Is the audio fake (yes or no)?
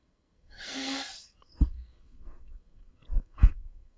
yes